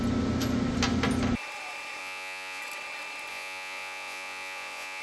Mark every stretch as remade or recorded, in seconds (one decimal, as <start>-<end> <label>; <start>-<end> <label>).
0.0-2.0 recorded; 2.0-2.6 remade; 2.6-3.3 recorded; 3.3-5.0 remade